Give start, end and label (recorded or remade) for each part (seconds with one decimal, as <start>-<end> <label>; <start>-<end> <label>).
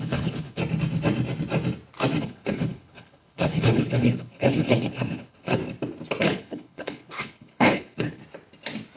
0.0-0.6 remade; 0.6-2.2 recorded; 2.2-5.6 remade; 5.6-6.2 recorded; 6.2-8.2 remade; 8.2-9.0 recorded